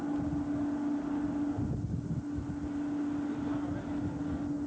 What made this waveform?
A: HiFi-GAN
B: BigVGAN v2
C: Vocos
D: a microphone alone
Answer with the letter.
D